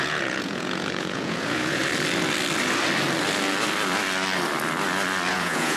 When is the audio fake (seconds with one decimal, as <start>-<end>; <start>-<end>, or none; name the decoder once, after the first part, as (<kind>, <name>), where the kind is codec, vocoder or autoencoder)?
0.0-1.8 (vocoder, Vocos); 5.3-5.8

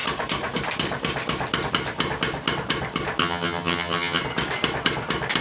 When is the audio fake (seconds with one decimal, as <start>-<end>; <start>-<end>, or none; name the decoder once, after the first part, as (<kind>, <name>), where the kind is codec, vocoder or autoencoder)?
3.2-4.2 (vocoder, HiFi-GAN)

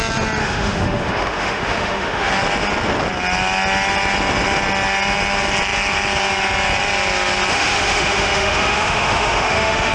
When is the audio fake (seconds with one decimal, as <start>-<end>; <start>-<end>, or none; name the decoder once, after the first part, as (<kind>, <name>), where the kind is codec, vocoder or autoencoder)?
0.4-2.3 (autoencoder, DAC-VAE); 7.5-9.9

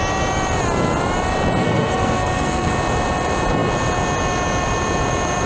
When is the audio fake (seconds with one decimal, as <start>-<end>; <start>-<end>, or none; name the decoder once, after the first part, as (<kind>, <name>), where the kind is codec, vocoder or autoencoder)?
1.6-2.7 (codec, SNAC)

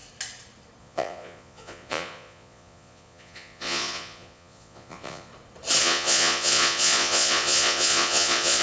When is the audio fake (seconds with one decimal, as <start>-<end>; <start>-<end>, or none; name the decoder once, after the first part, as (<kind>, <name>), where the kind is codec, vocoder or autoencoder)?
0.8-5.3 (vocoder, Vocos); 5.8-8.6

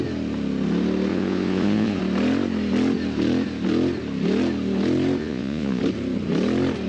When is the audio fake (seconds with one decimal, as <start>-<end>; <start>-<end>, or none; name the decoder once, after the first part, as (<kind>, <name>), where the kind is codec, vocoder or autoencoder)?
1.1-2.0 (vocoder, Vocos); 5.2-5.8

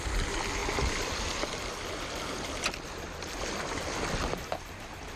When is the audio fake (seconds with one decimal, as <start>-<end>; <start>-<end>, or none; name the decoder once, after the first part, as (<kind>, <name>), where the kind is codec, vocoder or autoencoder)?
none